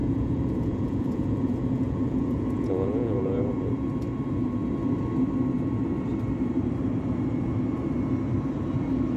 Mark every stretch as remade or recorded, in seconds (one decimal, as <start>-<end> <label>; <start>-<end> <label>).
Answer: 0.0-3.5 remade; 3.5-9.2 recorded

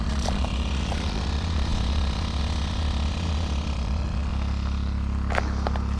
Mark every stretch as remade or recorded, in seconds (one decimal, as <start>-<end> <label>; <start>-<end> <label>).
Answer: 0.0-4.3 remade; 4.3-6.0 recorded

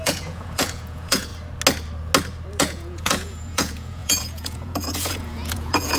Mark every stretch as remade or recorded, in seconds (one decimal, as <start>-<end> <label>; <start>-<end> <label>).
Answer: 0.0-1.3 remade; 1.3-2.6 recorded; 2.6-6.0 remade

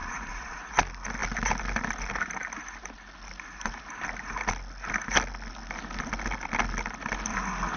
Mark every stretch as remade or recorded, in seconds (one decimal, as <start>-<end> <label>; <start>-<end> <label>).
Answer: 0.0-0.7 remade; 0.7-7.8 recorded

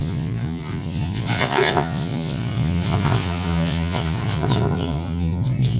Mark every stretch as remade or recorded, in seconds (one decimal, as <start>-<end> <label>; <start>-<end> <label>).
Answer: 0.0-5.8 remade